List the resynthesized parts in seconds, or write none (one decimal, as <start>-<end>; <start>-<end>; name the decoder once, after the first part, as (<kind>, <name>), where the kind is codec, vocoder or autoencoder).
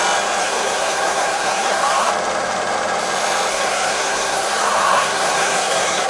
0.4-2.1 (codec, SNAC); 3.5-6.1